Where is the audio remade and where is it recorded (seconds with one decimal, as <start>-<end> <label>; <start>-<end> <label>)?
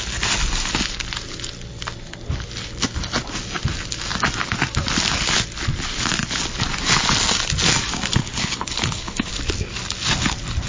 0.0-8.2 recorded; 8.2-9.3 remade; 9.3-10.7 recorded